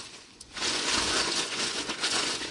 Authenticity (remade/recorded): remade